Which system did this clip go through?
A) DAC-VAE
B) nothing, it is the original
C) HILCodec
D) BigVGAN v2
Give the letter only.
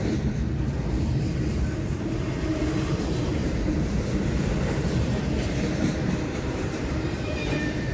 D